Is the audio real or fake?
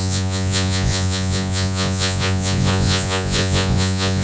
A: fake